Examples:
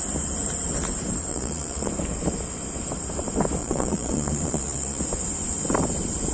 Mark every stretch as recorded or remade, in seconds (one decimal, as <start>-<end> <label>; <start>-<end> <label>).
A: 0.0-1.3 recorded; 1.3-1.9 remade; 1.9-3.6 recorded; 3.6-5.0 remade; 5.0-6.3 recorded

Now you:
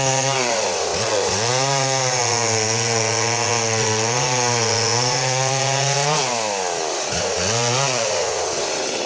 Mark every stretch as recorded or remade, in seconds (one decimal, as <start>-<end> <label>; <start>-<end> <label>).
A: 0.0-6.3 remade; 6.3-6.9 recorded; 6.9-9.1 remade

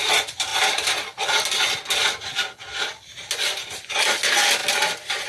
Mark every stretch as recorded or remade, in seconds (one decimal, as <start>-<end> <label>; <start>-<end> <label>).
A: 0.0-5.3 recorded

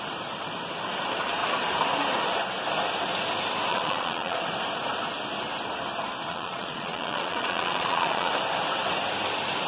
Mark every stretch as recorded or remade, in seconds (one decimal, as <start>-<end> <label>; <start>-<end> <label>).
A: 0.0-3.7 recorded; 3.7-4.4 remade; 4.4-6.3 recorded; 6.3-8.3 remade; 8.3-9.7 recorded

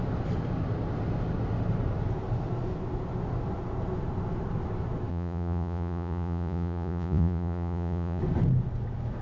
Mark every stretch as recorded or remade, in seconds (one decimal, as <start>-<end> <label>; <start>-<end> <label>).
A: 0.0-5.1 recorded; 5.1-8.2 remade; 8.2-9.2 recorded